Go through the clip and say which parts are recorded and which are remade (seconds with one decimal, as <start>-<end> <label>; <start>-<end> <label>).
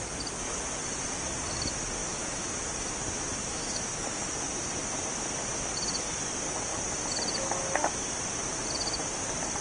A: 0.0-2.0 recorded; 2.0-2.6 remade; 2.6-3.4 recorded; 3.4-4.2 remade; 4.2-9.6 recorded